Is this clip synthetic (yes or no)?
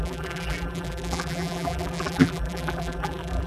yes